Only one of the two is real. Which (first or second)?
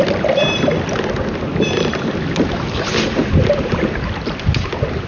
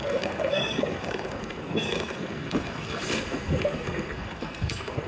first